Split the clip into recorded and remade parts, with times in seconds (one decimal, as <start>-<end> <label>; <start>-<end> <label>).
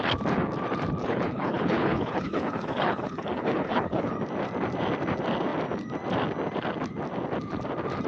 0.0-1.0 recorded; 1.0-4.1 remade; 4.1-8.1 recorded